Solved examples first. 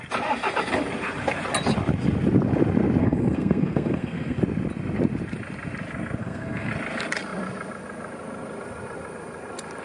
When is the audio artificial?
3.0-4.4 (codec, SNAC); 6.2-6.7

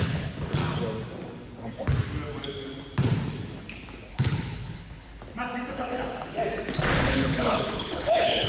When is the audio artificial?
0.0-0.6 (codec, HILCodec); 4.1-5.1; 5.7-6.4; 7.1-8.5

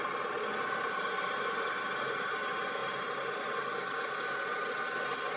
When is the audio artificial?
none